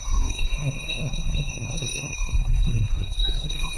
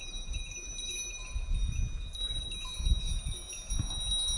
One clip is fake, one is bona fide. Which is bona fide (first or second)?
second